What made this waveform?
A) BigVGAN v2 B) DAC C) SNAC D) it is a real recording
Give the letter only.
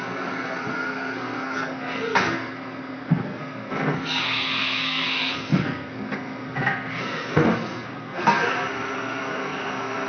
C